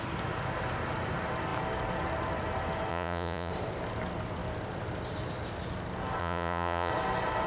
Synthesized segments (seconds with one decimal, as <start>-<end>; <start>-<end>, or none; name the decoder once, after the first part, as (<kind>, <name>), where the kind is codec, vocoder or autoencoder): 2.9-3.5 (vocoder, Vocos); 6.2-6.9